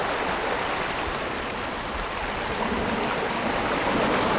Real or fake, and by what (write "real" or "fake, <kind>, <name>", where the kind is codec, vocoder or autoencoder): real